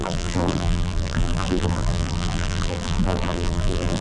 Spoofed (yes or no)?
yes